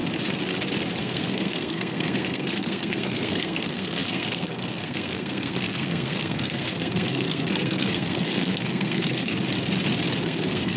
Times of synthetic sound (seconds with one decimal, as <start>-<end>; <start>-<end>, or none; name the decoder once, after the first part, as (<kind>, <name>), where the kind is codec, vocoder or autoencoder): 1.0-9.3 (codec, SNAC); 10.2-10.8